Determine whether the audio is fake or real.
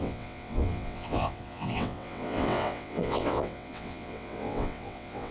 fake